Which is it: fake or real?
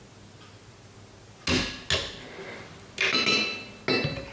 real